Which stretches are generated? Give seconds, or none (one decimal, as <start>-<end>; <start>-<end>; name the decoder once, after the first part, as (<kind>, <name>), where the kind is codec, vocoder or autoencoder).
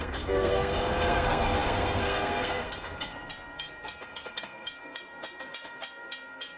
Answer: 0.0-6.6 (codec, SNAC)